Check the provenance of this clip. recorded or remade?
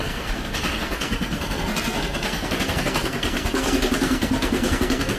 remade